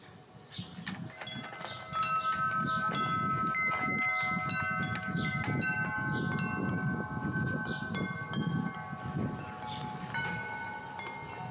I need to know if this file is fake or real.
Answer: real